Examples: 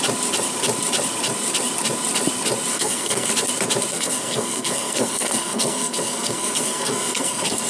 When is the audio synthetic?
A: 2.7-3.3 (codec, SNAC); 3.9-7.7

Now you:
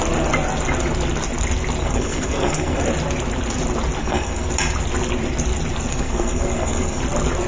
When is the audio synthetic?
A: 1.8-2.8 (codec, SNAC); 4.0-4.5; 5.9-7.0

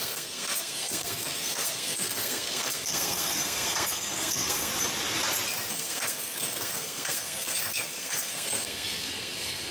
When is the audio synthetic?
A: 0.0-4.7 (codec, SNAC); 5.7-9.7

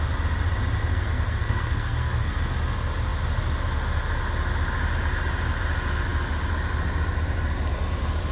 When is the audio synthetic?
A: 0.9-2.5 (codec, SNAC)

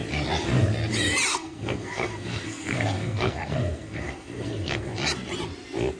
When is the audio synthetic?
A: 1.3-4.9 (codec, SNAC)

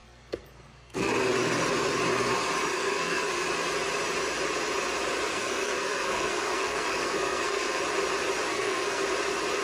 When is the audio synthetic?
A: 0.0-1.1 (codec, SNAC); 2.7-3.3; 5.3-7.8; 8.5-9.0

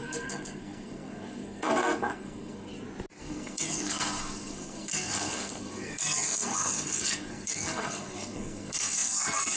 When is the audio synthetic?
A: 0.0-2.7 (codec, SNAC); 3.2-9.6